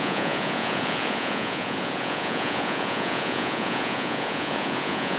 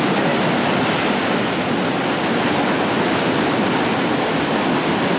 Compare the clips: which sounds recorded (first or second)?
second